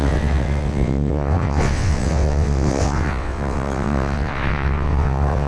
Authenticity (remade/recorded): remade